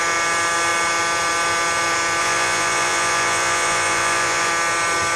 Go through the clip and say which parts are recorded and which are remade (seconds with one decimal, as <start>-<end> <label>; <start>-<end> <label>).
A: 0.0-2.2 recorded; 2.2-4.5 remade; 4.5-5.2 recorded